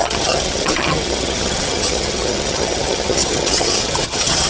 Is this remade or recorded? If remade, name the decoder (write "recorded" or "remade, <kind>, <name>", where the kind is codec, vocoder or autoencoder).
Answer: remade, vocoder, HiFi-GAN